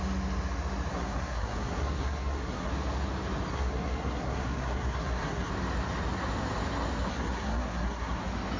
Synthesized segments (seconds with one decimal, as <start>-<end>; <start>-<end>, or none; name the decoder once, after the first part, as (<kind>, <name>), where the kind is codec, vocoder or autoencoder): 0.9-2.7 (codec, SNAC); 3.5-5.5; 7.1-8.2